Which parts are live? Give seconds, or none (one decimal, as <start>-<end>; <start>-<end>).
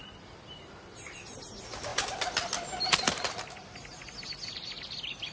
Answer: 0.0-5.3